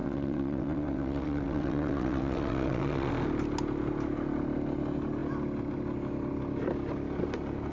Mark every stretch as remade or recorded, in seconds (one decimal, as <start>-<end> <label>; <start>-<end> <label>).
0.0-3.1 remade; 3.1-7.7 recorded